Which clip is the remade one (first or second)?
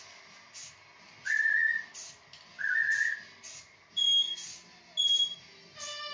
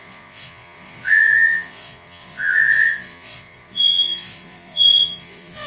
second